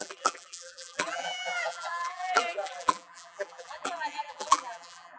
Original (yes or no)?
no